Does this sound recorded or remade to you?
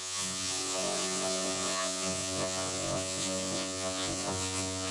remade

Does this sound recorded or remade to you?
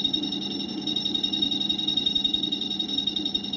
recorded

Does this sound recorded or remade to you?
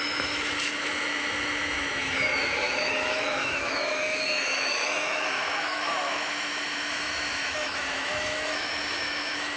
remade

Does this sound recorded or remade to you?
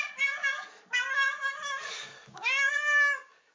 remade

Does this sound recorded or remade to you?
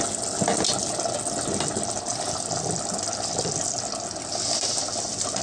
recorded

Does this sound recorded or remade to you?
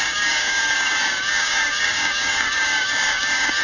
remade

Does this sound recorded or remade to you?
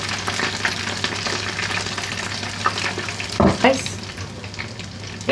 recorded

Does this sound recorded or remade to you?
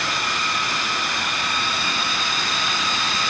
recorded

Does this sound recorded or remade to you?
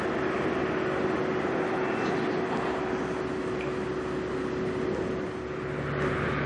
recorded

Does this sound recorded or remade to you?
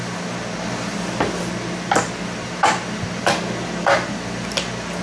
recorded